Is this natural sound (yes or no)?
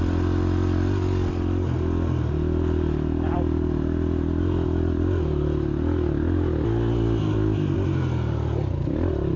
yes